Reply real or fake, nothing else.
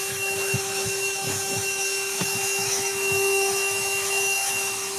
fake